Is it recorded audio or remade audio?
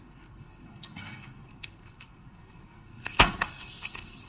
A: remade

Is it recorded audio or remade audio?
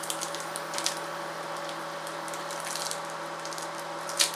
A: recorded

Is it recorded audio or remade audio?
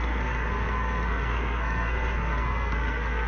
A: remade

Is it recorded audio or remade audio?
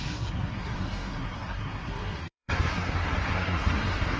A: remade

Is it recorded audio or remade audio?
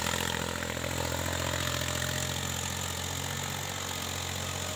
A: recorded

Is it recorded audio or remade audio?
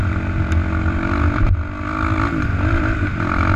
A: recorded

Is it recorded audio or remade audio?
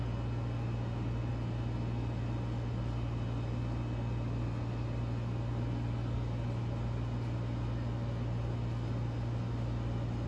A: recorded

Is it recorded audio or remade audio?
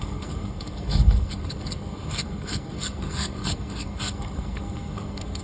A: remade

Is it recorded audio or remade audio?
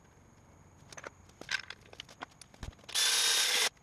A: recorded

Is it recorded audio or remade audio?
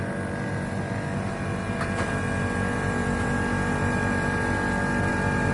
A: recorded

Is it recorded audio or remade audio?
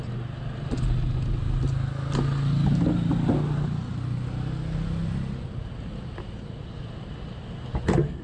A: recorded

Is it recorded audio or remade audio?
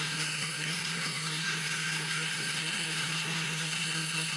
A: remade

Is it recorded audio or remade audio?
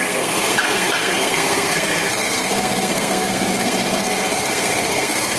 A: remade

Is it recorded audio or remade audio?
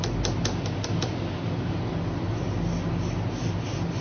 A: recorded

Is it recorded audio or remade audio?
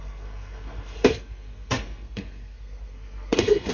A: remade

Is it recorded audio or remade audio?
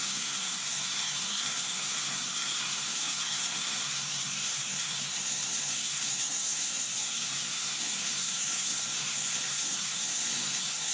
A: remade